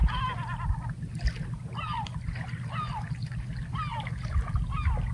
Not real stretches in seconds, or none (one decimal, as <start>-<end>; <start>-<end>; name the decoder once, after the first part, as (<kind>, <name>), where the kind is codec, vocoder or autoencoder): none